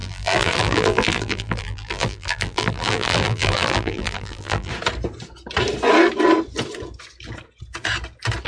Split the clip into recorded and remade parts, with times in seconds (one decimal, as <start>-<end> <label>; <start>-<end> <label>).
0.0-4.7 remade; 4.7-8.5 recorded